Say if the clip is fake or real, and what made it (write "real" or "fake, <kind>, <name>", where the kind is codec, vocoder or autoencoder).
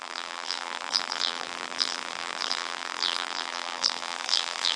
fake, vocoder, BigVGAN v2